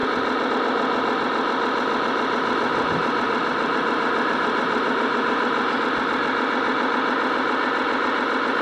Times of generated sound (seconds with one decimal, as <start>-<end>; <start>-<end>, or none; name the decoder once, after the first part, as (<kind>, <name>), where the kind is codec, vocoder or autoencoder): 2.7-5.8 (vocoder, BigVGAN v2)